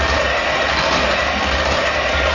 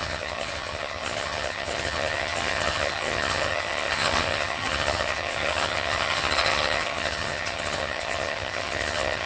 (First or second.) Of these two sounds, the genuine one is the first